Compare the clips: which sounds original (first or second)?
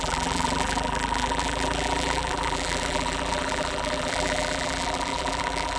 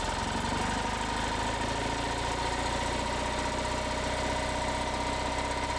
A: second